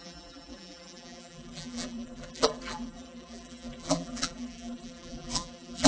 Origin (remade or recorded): remade